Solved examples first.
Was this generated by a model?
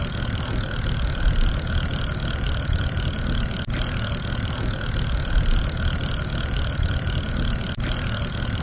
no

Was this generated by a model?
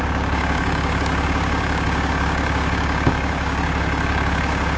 yes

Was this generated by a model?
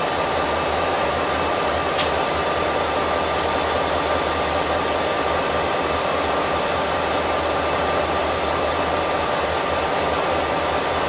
no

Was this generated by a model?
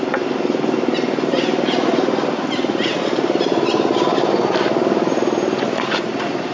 no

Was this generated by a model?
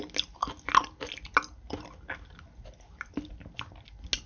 no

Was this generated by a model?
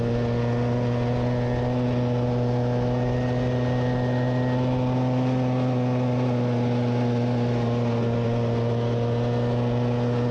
no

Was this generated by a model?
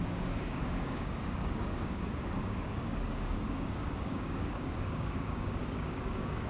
yes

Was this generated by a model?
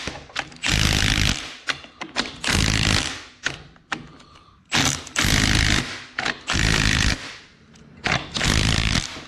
no